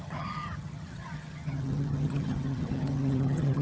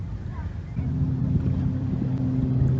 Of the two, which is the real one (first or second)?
second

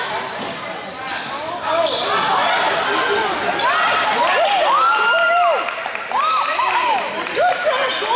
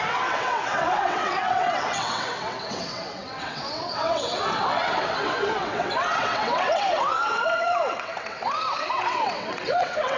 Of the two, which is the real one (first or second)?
first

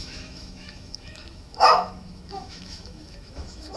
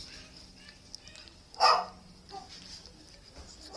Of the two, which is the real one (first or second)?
second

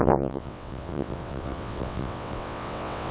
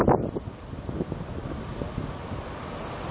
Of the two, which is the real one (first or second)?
second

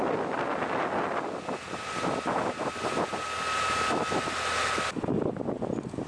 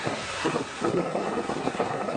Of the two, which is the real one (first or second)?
first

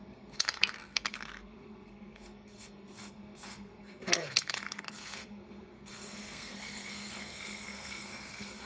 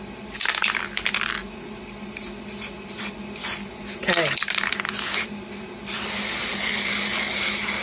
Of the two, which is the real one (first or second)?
second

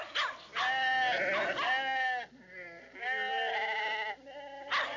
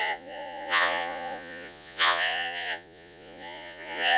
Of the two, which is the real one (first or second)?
first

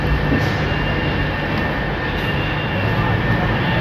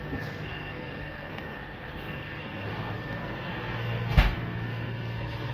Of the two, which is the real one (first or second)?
first